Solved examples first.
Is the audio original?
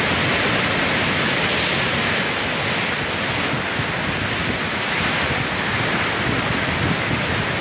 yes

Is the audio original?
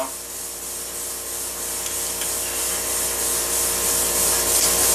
yes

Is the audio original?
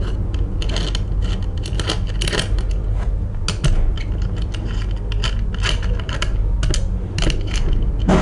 yes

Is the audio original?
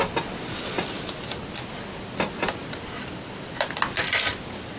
yes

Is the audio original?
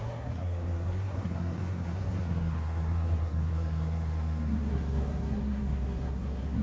no